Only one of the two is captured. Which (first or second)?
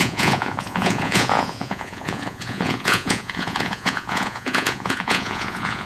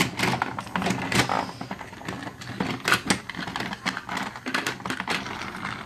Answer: second